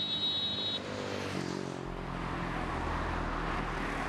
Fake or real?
real